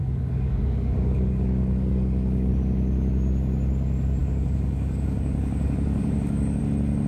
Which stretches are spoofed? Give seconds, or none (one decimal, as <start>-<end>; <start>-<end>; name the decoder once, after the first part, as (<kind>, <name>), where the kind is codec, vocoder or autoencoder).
0.0-2.5 (codec, DAC); 4.2-6.6